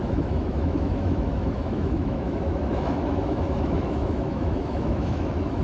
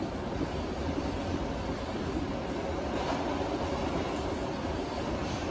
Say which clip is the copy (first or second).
first